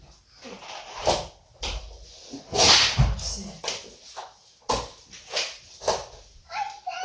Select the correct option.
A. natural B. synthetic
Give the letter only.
A